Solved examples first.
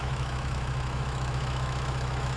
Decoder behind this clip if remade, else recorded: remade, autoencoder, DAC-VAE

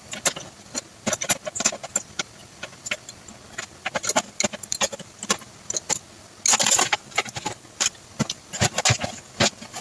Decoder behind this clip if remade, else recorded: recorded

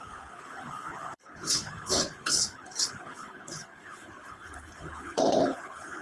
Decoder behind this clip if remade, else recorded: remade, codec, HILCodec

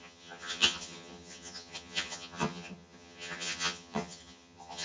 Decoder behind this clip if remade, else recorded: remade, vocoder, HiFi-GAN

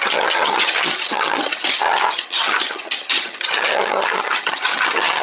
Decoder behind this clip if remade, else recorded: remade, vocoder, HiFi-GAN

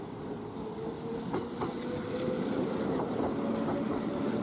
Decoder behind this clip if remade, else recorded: recorded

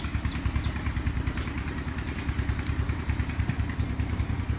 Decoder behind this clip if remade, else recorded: remade, vocoder, BigVGAN v2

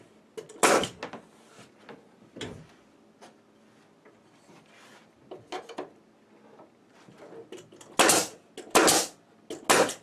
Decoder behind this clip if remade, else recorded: recorded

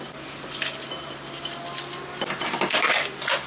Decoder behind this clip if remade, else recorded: recorded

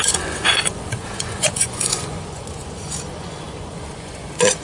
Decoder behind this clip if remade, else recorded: remade, vocoder, Vocos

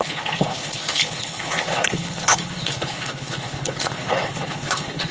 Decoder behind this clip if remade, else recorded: remade, codec, HILCodec